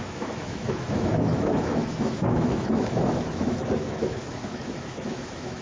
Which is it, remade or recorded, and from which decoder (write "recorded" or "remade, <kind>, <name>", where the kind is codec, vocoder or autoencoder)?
remade, autoencoder, DAC-VAE